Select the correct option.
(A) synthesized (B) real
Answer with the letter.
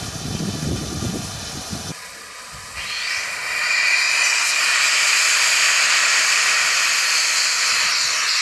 B